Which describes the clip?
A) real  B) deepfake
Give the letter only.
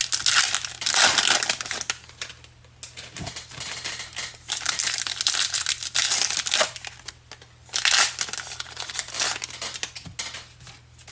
A